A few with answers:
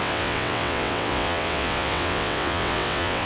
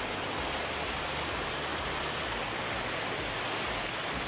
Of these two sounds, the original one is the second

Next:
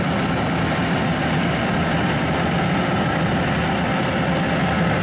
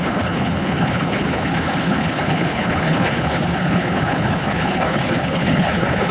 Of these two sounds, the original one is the first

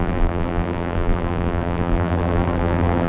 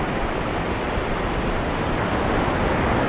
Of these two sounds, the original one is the second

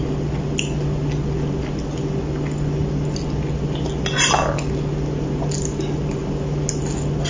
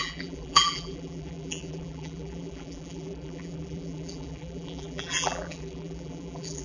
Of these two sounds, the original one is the first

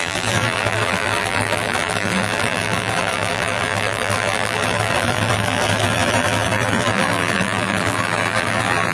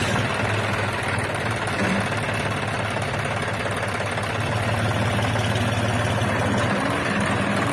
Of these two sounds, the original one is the second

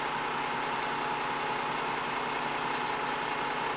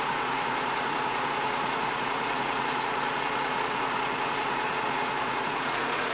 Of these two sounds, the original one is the first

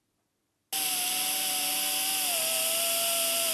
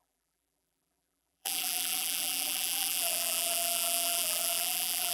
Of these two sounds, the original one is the first